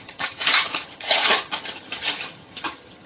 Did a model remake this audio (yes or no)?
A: yes